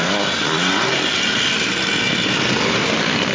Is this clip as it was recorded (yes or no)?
yes